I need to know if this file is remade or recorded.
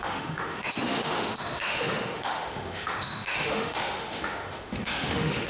remade